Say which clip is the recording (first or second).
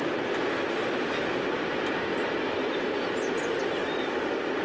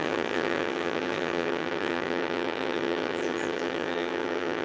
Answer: first